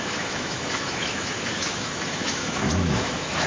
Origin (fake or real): fake